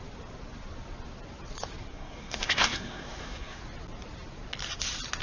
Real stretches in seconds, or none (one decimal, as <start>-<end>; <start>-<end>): 0.0-1.9; 3.6-5.2